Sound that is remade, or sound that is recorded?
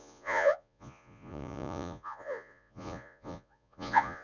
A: remade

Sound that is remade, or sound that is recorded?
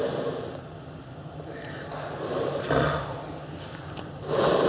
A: recorded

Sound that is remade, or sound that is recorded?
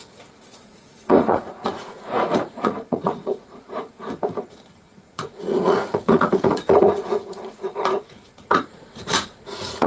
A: remade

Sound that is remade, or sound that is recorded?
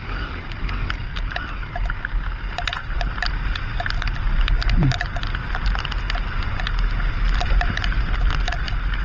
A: recorded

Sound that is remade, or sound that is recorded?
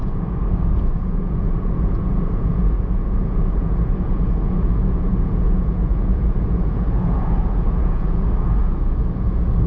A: remade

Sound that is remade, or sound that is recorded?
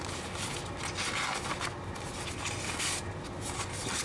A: recorded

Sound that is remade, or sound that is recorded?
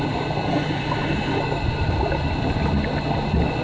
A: recorded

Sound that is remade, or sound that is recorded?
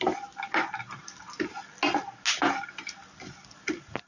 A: recorded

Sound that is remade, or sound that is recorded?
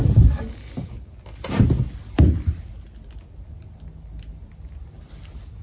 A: recorded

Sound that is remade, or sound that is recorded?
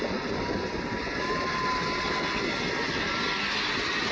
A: recorded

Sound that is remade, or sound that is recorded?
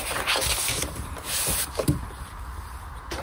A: recorded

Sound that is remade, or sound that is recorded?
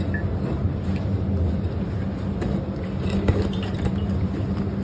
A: recorded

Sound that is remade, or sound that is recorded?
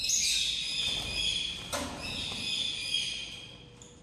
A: recorded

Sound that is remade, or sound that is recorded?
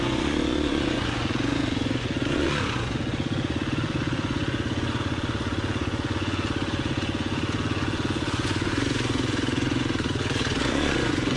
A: remade